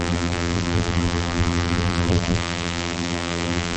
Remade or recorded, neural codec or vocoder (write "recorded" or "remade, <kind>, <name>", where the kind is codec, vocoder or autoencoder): remade, vocoder, BigVGAN v2